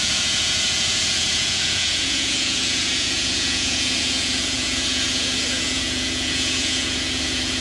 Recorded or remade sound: remade